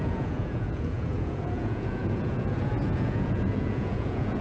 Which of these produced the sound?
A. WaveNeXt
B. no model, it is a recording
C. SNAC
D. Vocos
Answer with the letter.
D